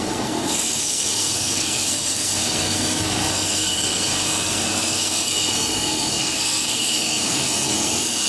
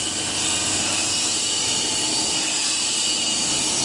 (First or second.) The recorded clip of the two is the second